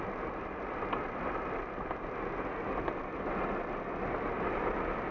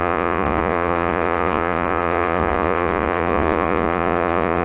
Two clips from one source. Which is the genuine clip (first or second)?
first